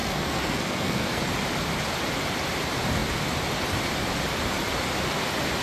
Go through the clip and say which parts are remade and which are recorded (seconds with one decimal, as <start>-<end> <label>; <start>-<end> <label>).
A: 0.0-1.2 remade; 1.2-5.6 recorded